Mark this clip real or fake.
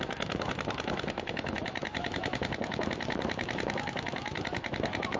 fake